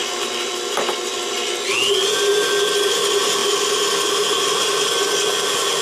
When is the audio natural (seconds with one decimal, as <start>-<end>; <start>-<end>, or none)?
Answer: 0.0-5.8